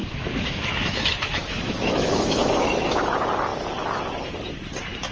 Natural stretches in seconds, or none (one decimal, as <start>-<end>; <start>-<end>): 3.1-5.1